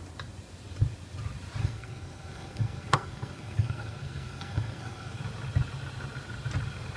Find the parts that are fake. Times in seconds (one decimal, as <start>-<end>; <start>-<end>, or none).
1.6-5.2